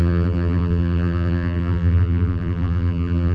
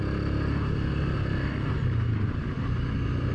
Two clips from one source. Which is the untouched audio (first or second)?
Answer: second